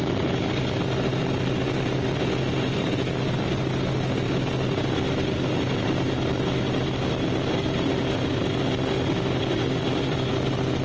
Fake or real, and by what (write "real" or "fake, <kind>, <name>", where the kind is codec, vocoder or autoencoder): real